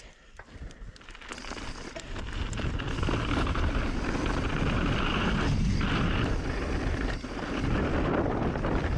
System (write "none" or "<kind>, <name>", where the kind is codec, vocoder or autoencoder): none